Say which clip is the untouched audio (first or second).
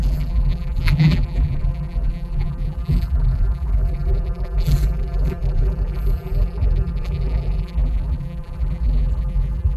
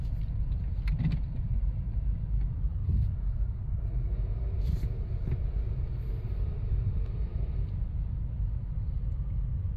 second